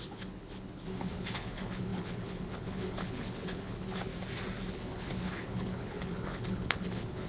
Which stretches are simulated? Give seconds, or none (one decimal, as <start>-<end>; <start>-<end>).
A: 0.0-4.1; 4.7-7.3